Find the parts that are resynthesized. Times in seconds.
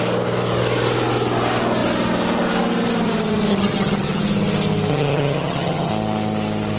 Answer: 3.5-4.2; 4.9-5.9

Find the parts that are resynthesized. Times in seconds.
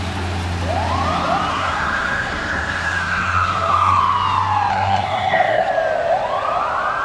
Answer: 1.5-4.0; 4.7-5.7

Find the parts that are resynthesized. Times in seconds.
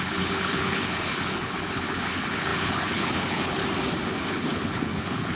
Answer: 0.0-3.6; 4.3-5.4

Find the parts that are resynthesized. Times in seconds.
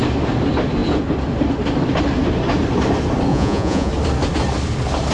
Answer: 3.3-3.9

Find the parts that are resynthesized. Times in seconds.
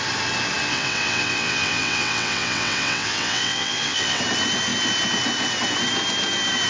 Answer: 0.7-4.2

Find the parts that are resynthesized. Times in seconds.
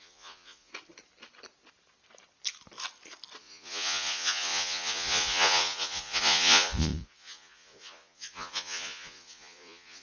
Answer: 0.0-0.7; 3.4-10.0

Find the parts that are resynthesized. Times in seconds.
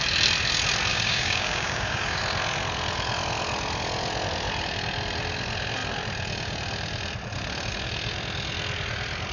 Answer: 0.9-2.2